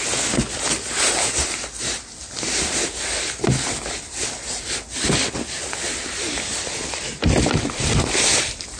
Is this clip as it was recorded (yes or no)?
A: yes